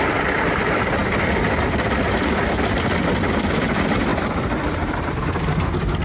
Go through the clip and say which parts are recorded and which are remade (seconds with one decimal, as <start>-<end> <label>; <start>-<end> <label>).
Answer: 0.0-4.1 recorded; 4.1-5.2 remade; 5.2-6.0 recorded